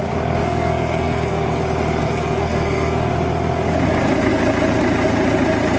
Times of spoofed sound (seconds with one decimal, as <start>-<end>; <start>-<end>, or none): 0.4-1.6; 2.0-3.1